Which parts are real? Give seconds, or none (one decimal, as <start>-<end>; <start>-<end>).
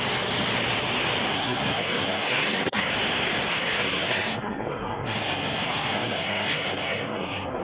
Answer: 0.0-1.3; 2.9-3.5